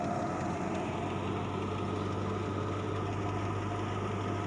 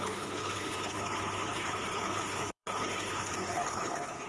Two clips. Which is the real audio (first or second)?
first